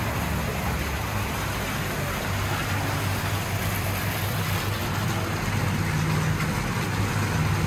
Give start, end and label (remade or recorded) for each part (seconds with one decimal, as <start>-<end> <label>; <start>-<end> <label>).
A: 0.0-7.7 recorded